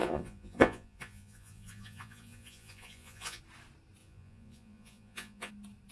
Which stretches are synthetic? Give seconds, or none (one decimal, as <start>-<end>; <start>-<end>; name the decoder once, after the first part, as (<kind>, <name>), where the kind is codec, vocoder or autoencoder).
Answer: 0.0-3.4 (vocoder, Vocos); 4.0-5.5

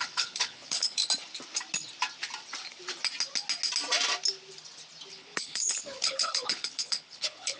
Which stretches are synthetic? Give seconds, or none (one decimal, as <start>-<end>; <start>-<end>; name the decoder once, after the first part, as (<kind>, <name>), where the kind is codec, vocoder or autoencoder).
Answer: 0.0-1.0 (codec, HILCodec); 5.1-7.6

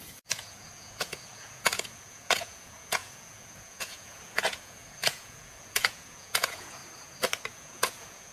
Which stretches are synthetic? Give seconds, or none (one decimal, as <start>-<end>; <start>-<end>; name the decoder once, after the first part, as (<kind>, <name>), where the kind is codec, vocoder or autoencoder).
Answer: 0.0-6.8 (vocoder, Vocos); 7.5-8.3